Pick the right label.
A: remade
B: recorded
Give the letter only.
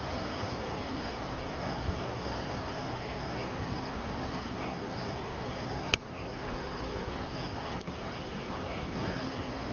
A